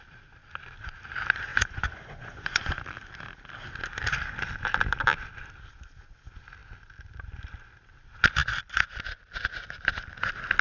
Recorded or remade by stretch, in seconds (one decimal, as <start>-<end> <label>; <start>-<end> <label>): 0.0-1.5 recorded; 1.5-2.8 remade; 2.8-10.6 recorded